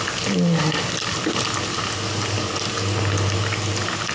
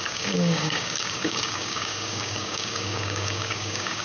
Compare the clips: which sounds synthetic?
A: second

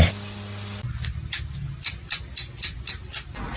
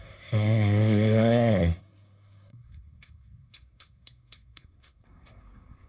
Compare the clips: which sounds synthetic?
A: second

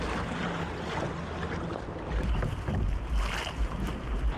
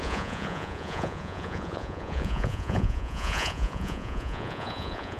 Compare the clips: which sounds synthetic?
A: second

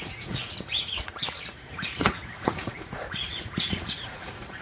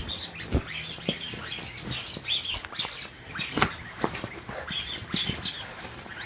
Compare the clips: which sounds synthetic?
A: first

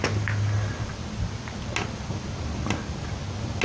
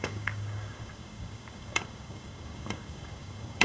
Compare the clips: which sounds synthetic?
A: second